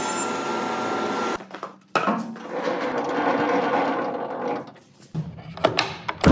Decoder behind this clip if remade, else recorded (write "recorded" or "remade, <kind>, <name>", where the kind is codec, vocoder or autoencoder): recorded